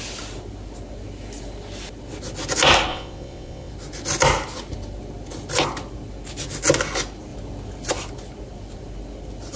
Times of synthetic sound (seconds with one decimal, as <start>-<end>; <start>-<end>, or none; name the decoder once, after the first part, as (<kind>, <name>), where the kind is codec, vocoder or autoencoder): 2.9-3.7 (vocoder, WaveNeXt)